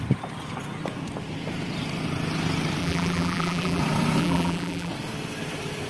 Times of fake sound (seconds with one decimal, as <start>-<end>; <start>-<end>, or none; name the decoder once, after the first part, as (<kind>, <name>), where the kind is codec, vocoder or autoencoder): 2.8-3.8 (vocoder, BigVGAN v2); 4.2-4.9